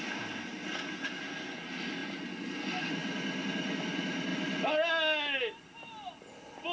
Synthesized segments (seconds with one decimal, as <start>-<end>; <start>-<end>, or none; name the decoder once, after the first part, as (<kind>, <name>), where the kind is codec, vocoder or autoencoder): none